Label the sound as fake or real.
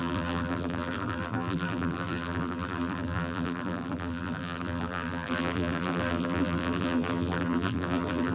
fake